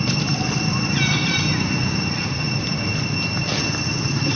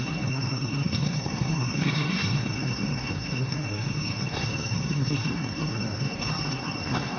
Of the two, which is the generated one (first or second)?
second